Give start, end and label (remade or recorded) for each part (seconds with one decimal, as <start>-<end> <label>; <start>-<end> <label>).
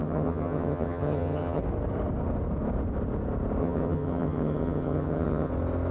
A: 0.0-1.6 remade; 1.6-3.6 recorded; 3.6-5.5 remade; 5.5-5.9 recorded